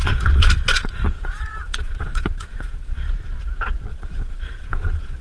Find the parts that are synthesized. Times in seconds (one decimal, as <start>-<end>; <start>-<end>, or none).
0.0-3.1; 3.9-5.2

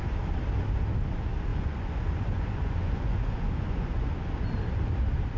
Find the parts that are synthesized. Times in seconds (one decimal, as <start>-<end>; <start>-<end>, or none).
1.5-3.9

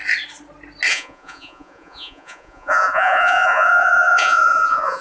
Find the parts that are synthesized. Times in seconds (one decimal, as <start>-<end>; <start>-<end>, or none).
0.9-5.0